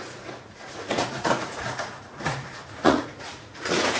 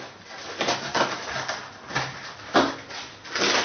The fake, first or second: first